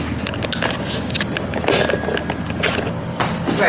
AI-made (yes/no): no